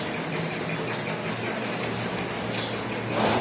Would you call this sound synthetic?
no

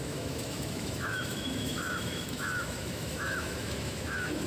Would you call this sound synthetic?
yes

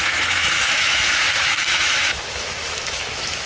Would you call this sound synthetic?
yes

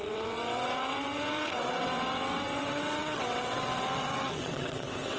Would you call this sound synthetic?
yes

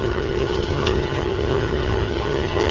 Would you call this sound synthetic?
yes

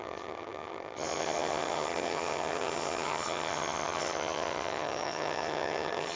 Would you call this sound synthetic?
yes